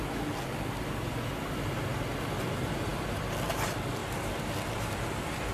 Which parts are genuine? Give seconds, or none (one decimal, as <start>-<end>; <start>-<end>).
0.0-4.0; 4.8-5.5